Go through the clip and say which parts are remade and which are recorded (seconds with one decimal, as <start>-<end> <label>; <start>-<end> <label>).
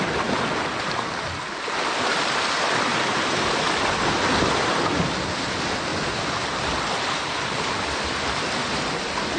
0.0-9.4 recorded